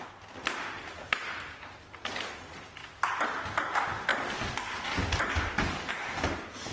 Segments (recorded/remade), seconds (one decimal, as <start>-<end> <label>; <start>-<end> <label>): 0.0-4.1 recorded; 4.1-5.9 remade; 5.9-6.7 recorded